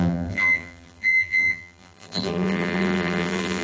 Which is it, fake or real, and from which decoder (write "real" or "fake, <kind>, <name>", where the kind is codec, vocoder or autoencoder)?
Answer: fake, vocoder, BigVGAN v2